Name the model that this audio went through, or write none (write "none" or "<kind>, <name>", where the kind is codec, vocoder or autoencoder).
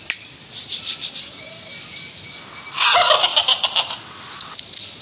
none